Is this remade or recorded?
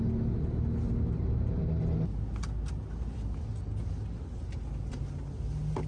recorded